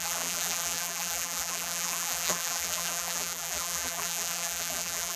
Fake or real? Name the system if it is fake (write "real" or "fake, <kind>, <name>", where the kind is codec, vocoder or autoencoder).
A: fake, vocoder, BigVGAN v2